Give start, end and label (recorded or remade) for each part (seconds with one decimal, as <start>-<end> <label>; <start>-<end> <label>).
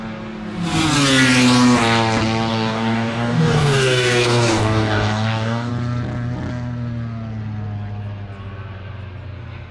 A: 0.0-2.5 recorded; 2.5-5.7 remade; 5.7-9.7 recorded